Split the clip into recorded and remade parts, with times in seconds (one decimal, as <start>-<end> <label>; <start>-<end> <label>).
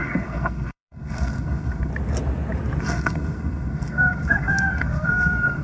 0.0-1.9 remade; 1.9-2.8 recorded; 2.8-5.6 remade